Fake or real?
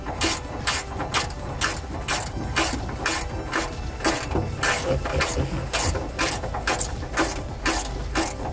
real